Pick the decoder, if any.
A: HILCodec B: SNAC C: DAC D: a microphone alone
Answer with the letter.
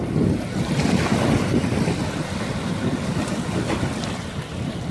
D